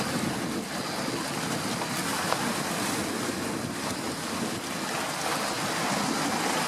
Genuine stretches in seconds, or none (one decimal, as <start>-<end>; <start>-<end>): 0.0-6.7